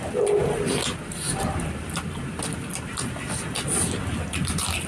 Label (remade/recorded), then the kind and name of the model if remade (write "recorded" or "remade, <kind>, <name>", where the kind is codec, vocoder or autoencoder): recorded